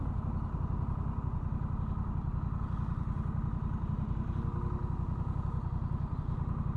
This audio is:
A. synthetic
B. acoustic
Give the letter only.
B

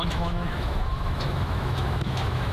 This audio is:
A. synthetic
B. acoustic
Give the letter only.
A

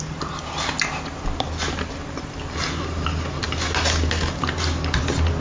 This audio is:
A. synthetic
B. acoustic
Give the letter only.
B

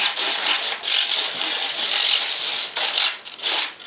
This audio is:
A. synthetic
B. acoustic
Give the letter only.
B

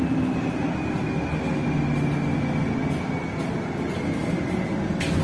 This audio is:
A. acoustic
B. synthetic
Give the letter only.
A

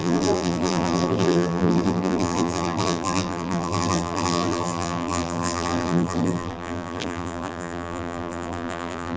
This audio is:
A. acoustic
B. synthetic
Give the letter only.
B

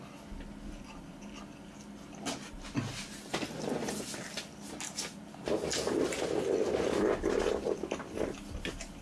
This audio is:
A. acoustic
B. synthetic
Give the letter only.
A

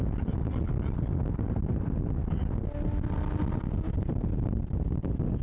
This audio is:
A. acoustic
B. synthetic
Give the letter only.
A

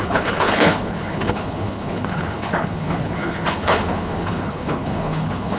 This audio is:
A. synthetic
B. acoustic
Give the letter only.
A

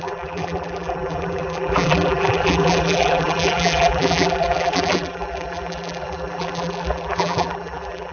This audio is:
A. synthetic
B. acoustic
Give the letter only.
A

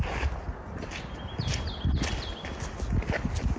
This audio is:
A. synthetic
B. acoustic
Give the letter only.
B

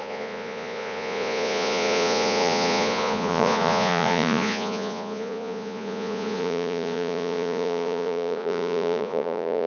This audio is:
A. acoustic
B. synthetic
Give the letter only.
B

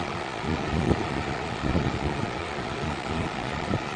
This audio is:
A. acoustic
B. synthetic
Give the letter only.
B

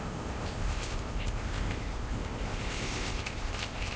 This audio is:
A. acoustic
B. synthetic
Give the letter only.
B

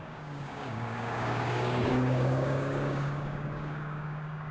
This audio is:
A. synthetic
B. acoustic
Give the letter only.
A